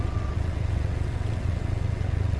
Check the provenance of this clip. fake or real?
fake